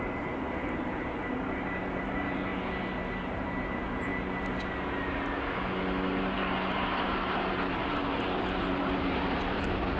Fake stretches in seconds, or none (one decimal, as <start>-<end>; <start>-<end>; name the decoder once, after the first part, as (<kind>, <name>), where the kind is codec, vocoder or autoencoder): 0.0-2.5 (vocoder, BigVGAN v2); 3.2-4.1; 6.2-10.0